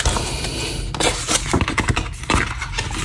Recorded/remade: recorded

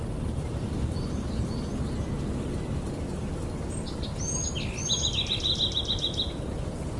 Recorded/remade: recorded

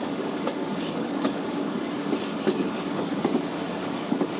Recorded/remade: remade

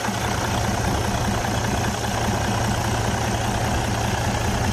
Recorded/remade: recorded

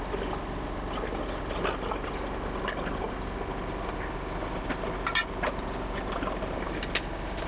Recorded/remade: recorded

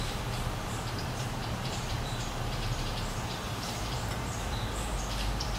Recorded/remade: remade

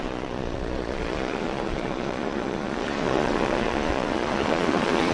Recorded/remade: remade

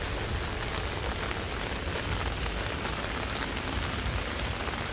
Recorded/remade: recorded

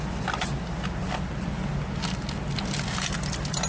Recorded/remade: recorded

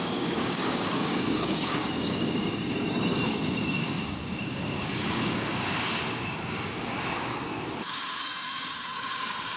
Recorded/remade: remade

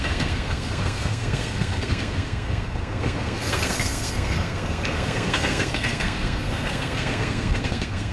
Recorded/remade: remade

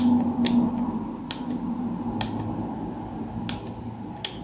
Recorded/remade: recorded